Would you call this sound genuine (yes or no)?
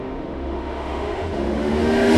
no